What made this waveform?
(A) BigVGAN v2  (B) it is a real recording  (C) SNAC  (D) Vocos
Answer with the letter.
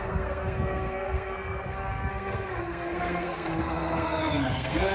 C